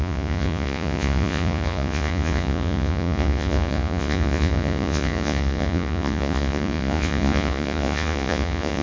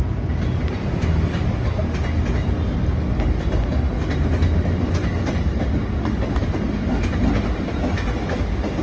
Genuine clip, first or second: second